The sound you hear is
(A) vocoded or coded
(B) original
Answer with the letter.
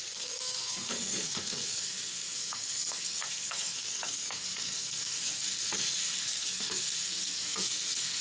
A